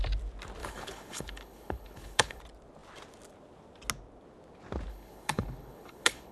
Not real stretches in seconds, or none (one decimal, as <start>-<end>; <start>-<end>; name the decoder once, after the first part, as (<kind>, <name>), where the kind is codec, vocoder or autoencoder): 0.6-2.4 (codec, HILCodec); 4.9-6.3